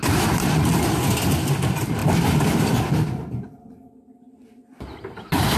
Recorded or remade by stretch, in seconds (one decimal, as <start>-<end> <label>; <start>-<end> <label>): 0.0-5.6 recorded